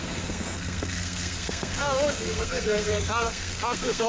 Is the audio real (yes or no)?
no